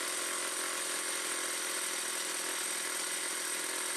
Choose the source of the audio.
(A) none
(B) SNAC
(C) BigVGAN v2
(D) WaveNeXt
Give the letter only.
A